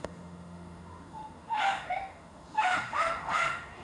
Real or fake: fake